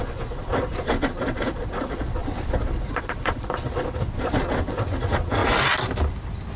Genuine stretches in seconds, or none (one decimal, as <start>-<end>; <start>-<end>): 5.4-6.6